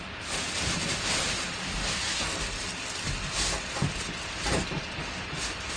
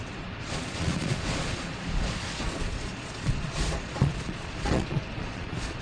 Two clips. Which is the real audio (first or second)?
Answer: first